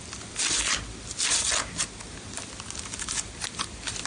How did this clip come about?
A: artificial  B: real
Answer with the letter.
B